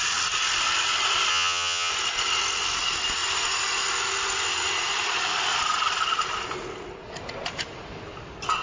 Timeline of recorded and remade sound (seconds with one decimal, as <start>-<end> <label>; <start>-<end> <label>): 0.0-1.3 recorded; 1.3-1.9 remade; 1.9-8.6 recorded